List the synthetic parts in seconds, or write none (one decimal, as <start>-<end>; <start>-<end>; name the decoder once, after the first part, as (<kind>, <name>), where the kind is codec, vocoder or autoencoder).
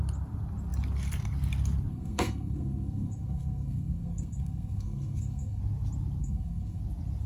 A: 1.9-5.6 (codec, SNAC); 6.2-6.8